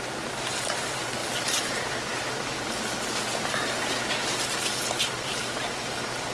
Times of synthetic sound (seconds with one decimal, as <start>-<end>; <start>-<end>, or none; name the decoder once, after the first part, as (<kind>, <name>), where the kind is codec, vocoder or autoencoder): none